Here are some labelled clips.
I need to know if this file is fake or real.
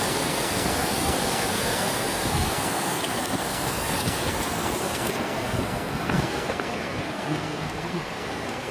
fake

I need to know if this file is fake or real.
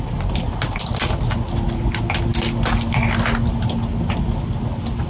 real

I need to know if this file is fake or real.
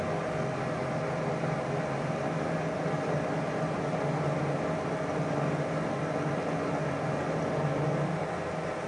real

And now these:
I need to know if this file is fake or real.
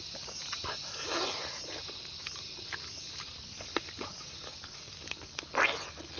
real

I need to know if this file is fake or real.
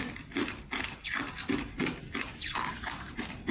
real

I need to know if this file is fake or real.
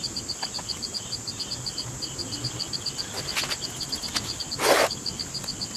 real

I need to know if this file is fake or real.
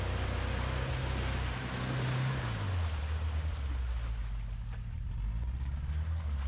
real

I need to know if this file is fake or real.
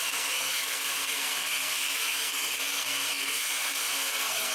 fake